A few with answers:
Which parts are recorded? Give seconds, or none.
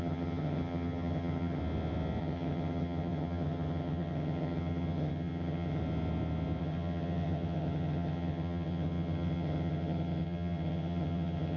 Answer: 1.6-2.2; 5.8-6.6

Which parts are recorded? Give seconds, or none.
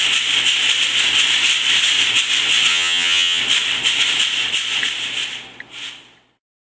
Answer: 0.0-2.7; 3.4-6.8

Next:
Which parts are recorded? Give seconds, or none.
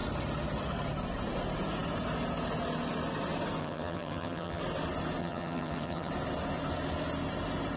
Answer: 0.0-3.6; 4.6-5.2; 6.1-7.8